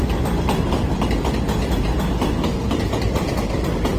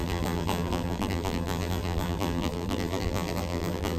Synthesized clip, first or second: second